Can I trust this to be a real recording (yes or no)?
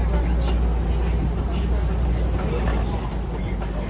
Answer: yes